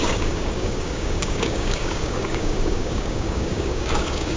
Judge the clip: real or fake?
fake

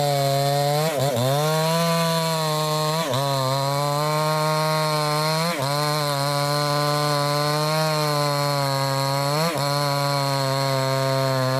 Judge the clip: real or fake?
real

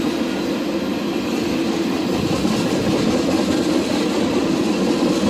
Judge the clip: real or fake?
real